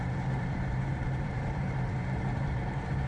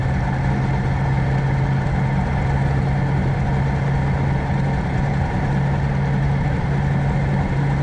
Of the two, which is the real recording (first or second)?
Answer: second